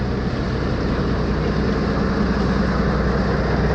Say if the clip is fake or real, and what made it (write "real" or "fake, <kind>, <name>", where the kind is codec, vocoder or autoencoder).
real